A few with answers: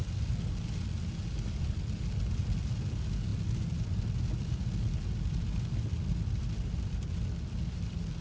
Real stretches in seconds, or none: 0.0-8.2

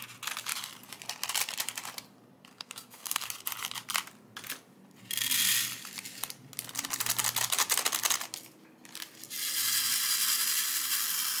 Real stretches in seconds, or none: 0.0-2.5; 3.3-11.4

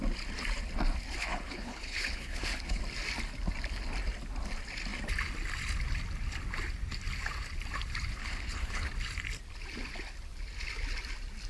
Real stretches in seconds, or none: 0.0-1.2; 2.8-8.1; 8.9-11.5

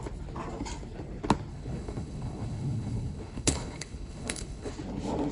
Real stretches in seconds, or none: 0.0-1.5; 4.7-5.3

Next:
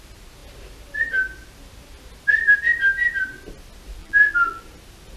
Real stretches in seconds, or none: 0.0-4.0; 4.6-5.2

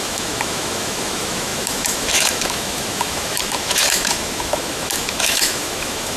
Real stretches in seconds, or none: none